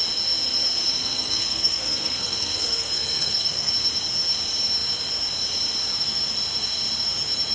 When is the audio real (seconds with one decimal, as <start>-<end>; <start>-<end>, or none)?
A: 0.0-1.0; 3.7-7.5